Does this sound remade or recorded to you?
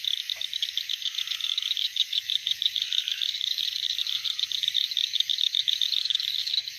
remade